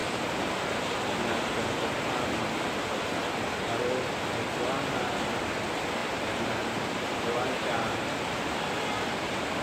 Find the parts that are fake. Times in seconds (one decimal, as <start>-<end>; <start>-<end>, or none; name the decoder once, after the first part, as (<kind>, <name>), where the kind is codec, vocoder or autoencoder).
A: 6.0-8.7 (vocoder, BigVGAN v2)